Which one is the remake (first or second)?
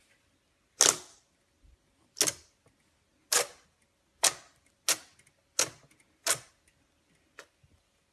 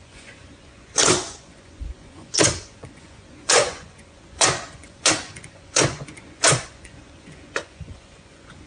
second